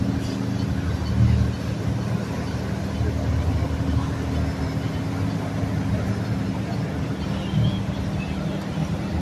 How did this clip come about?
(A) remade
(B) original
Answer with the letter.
B